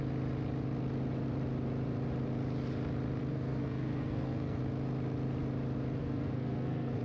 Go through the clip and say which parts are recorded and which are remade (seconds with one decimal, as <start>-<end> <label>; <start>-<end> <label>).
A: 0.0-3.3 recorded; 3.3-4.6 remade; 4.6-6.0 recorded; 6.0-7.0 remade